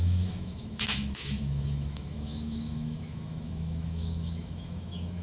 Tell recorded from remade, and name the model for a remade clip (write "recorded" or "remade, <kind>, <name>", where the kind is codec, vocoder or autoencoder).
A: remade, autoencoder, DAC-VAE